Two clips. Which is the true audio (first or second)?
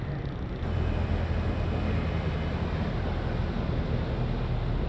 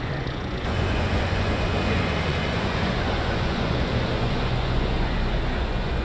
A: first